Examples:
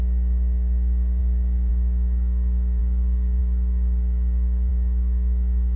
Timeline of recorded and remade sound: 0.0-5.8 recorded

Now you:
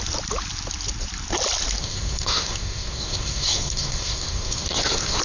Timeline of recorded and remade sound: 0.0-1.8 recorded; 1.8-5.2 remade

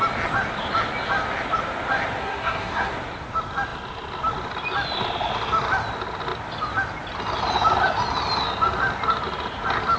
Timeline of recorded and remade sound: 0.0-2.2 recorded; 2.2-2.9 remade; 2.9-10.0 recorded